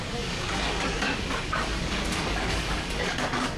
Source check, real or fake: fake